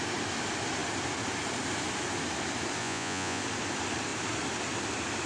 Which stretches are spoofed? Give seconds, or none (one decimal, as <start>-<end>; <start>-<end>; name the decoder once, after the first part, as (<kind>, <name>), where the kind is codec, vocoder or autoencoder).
2.8-3.4 (vocoder, Vocos)

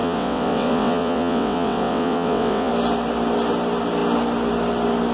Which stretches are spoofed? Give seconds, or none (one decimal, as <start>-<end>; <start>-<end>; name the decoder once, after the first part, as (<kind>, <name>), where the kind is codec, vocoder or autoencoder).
0.0-2.7 (vocoder, WaveNeXt)

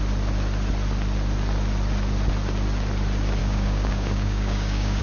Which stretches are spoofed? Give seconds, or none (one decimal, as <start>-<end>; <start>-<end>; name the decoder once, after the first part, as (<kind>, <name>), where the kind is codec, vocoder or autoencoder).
3.4-5.0 (codec, DAC)

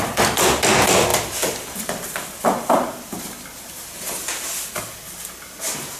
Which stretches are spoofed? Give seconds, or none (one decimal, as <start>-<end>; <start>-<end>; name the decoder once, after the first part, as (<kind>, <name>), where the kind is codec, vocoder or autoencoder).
1.1-4.7 (vocoder, BigVGAN v2)

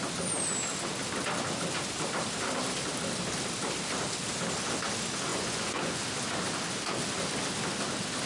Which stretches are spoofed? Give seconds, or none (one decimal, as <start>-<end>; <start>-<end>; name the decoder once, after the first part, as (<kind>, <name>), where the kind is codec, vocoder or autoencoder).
5.3-6.0 (vocoder, Vocos)

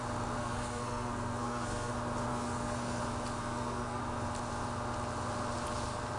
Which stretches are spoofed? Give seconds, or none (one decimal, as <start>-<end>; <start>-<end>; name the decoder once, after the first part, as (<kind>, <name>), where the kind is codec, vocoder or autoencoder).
0.4-1.9 (codec, SNAC); 2.3-3.0; 3.4-4.0

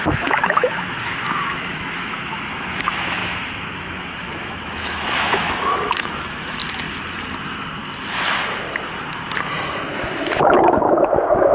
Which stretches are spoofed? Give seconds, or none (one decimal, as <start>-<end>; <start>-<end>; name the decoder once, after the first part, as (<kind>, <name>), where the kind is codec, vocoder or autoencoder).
0.0-6.6 (autoencoder, DAC-VAE); 10.4-11.5